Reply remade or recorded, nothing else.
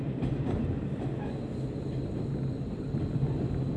recorded